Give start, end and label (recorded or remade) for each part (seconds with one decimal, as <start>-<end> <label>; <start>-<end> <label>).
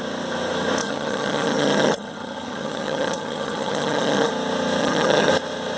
0.0-0.8 recorded; 0.8-4.3 remade; 4.3-4.8 recorded; 4.8-5.3 remade; 5.3-5.8 recorded